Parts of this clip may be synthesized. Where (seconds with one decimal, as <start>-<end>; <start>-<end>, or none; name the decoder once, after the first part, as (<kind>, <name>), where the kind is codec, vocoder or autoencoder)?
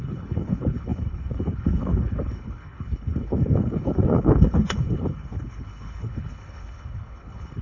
0.0-7.6 (codec, HILCodec)